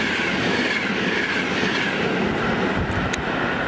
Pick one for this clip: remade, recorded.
recorded